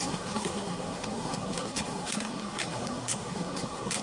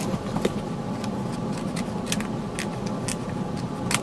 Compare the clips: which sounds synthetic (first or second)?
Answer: first